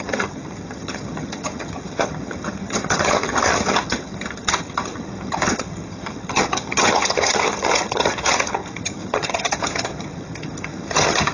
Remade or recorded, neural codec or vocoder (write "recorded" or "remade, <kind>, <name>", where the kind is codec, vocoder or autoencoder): remade, vocoder, HiFi-GAN